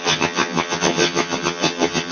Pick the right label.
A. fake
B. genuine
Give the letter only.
A